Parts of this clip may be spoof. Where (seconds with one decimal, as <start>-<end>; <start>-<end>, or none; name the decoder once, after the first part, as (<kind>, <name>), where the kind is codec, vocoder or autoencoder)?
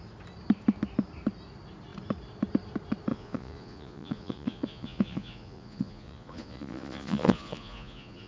3.1-8.3 (vocoder, Vocos)